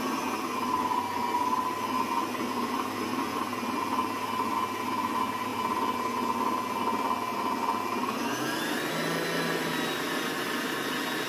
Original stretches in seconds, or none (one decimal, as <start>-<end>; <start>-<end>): 0.0-11.3